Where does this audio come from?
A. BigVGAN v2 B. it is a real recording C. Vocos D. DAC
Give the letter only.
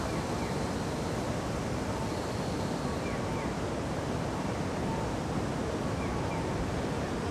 B